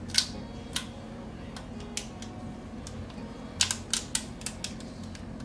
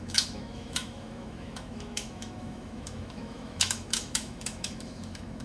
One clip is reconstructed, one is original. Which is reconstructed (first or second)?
second